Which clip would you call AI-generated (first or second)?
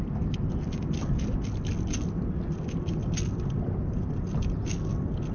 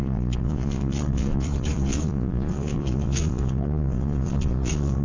second